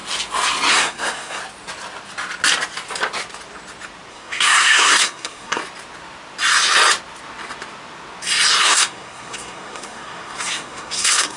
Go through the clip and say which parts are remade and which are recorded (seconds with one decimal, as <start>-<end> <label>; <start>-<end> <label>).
0.0-0.7 recorded; 0.7-1.4 remade; 1.4-4.1 recorded; 4.1-5.6 remade; 5.6-8.6 recorded; 8.6-11.4 remade